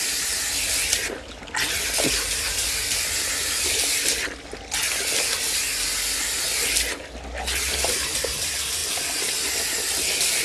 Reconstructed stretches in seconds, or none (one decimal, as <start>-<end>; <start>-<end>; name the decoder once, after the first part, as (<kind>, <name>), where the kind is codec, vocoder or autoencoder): none